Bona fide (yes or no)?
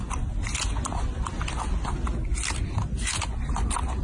yes